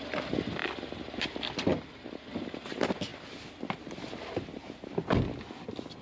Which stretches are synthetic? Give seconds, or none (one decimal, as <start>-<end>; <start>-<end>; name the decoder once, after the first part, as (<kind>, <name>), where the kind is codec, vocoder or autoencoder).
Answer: none